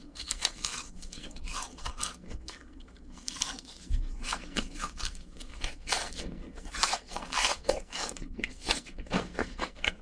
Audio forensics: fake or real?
fake